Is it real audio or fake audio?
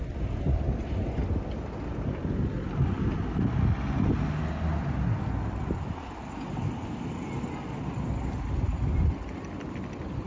real